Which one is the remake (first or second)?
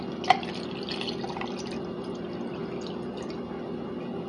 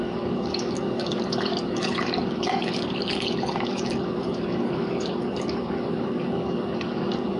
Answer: second